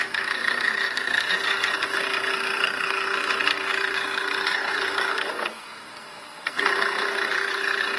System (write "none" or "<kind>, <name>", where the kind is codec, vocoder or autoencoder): codec, SNAC